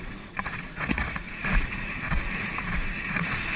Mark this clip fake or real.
fake